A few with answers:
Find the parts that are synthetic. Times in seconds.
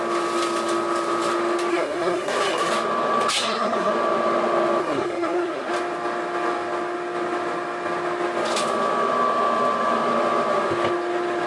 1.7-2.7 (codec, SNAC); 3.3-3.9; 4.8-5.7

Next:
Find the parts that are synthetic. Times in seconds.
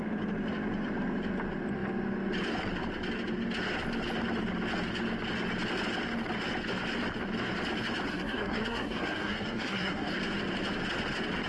8.1-10.1 (codec, SNAC)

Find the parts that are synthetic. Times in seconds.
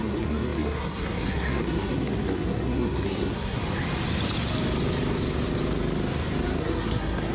0.0-3.6 (codec, SNAC); 6.6-7.3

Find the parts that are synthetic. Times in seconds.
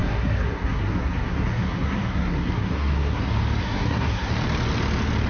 0.0-3.2 (codec, SNAC); 3.6-4.3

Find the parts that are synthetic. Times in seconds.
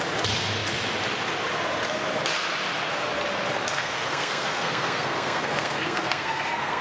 3.7-6.8 (codec, SNAC)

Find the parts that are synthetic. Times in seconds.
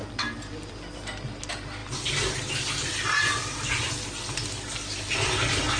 none